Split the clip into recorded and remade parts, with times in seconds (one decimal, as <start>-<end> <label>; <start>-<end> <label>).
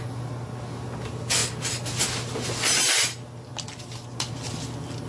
0.0-5.1 recorded